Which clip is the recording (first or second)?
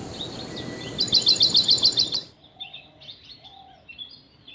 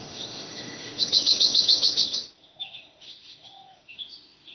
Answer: first